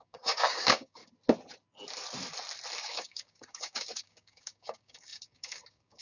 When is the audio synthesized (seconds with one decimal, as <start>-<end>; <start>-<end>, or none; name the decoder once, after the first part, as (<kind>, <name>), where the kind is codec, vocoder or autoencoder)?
0.0-1.0 (codec, DAC); 2.8-6.0